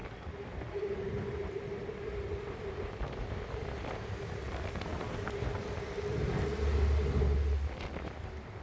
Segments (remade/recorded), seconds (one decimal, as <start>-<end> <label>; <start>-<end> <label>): 0.0-3.0 remade; 3.0-8.6 recorded